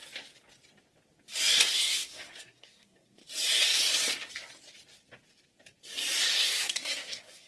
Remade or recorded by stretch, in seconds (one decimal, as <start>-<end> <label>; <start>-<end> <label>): 0.0-1.7 recorded; 1.7-3.2 remade; 3.2-6.4 recorded; 6.4-7.5 remade